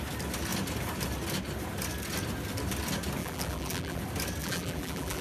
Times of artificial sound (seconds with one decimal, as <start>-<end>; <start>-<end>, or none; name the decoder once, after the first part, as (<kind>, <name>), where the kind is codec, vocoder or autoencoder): 3.2-4.0 (vocoder, BigVGAN v2); 4.4-5.2